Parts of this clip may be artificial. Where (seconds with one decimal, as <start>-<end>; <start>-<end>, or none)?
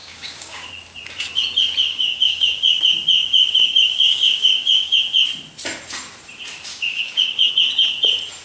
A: 0.0-0.7; 1.8-2.8; 3.2-5.0; 6.7-7.5